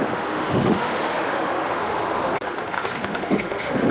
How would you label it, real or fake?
fake